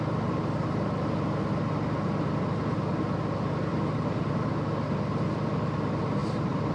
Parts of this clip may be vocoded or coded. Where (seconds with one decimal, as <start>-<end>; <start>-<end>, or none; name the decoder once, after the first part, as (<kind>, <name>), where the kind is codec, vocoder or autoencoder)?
3.7-4.3 (vocoder, BigVGAN v2); 6.2-6.7